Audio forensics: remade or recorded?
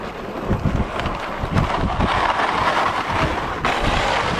recorded